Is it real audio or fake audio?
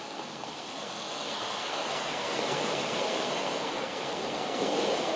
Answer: fake